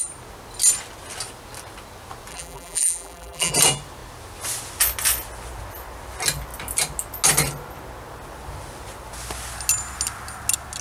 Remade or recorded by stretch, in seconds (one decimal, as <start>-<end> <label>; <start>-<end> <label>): 0.0-2.3 recorded; 2.3-3.5 remade; 3.5-10.8 recorded